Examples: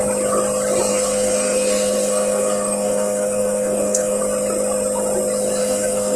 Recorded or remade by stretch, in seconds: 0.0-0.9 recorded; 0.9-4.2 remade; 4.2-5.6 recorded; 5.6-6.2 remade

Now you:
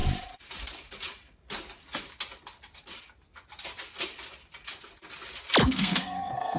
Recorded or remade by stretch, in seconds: 0.0-5.6 recorded; 5.6-6.6 remade

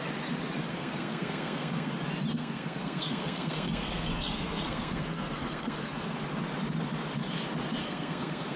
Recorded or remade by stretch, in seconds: 0.0-0.7 recorded; 0.7-1.9 remade; 1.9-2.3 recorded; 2.3-6.2 remade; 6.2-7.8 recorded; 7.8-8.6 remade

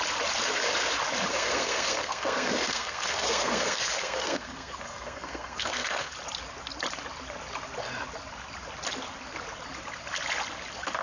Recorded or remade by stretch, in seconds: 0.0-1.3 recorded; 1.3-6.1 remade; 6.1-11.0 recorded

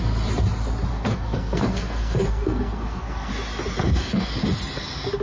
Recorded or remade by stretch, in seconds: 0.0-0.9 recorded; 0.9-3.3 remade; 3.3-3.8 recorded; 3.8-4.3 remade; 4.3-5.2 recorded